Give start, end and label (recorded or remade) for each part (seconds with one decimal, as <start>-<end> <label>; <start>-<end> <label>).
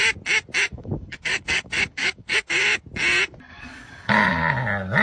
0.0-0.7 recorded; 0.7-2.4 remade; 2.4-3.5 recorded; 3.5-4.1 remade; 4.1-5.0 recorded